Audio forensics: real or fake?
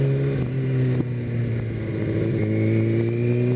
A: real